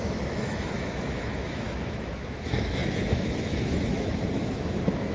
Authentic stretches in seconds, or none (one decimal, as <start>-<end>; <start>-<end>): none

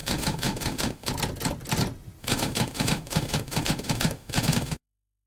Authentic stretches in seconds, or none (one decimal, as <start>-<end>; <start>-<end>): 1.1-2.2

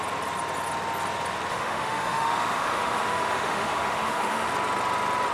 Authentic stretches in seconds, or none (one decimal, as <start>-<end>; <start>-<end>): 0.0-1.5; 4.5-5.3

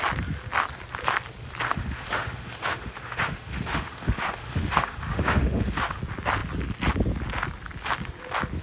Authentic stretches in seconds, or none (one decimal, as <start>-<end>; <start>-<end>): 0.0-1.7; 6.0-8.6

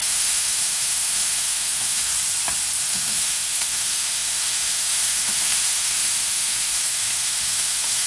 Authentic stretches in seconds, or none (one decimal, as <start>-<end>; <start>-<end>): 2.1-2.8

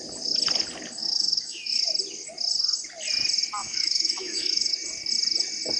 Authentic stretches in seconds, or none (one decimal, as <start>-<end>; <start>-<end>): 0.0-1.0; 1.9-3.6; 4.7-5.8

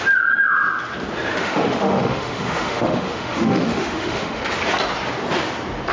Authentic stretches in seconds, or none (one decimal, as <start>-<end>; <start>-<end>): 0.0-1.3; 4.4-5.9